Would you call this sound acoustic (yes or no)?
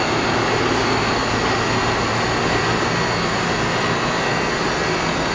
yes